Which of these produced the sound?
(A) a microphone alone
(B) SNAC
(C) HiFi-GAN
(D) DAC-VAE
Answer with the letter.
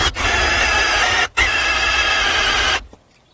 A